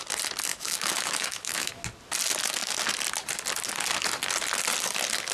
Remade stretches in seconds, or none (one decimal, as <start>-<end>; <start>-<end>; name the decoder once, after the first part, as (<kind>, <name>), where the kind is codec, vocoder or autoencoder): 0.5-1.7 (autoencoder, DAC-VAE)